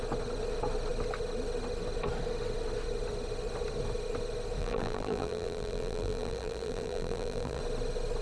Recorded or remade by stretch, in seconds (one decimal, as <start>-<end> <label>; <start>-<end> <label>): 0.0-4.6 recorded; 4.6-7.6 remade; 7.6-8.2 recorded